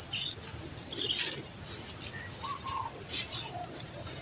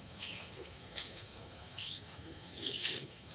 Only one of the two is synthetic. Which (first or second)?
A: second